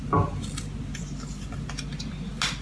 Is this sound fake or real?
real